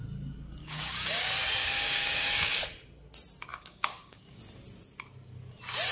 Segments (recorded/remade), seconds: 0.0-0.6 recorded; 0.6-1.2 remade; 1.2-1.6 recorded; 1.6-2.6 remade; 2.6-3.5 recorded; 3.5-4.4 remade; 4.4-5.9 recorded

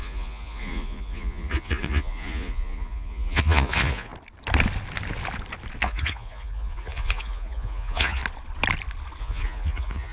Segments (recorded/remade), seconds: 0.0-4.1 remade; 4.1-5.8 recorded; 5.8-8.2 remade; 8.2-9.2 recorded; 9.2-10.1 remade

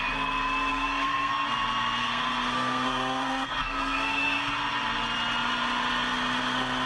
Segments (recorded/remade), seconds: 0.0-0.7 recorded; 0.7-1.3 remade; 1.3-2.0 recorded; 2.0-4.5 remade; 4.5-6.9 recorded

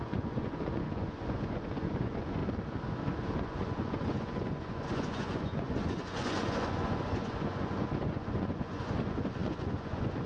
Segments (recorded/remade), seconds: 0.0-2.4 remade; 2.4-3.2 recorded; 3.2-10.3 remade